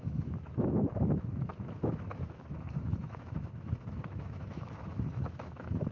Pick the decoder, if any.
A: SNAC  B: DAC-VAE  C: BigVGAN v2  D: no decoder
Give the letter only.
B